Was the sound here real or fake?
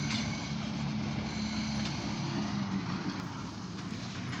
real